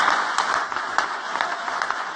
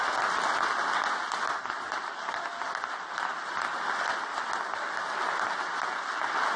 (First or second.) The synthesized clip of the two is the first